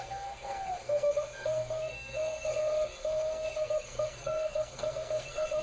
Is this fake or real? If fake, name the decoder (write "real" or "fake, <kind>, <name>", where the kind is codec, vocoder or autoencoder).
fake, codec, SNAC